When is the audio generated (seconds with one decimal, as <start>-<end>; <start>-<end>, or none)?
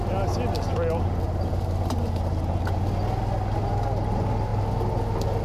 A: none